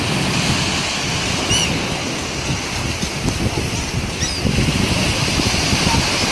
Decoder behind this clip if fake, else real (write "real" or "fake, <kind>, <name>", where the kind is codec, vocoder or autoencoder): real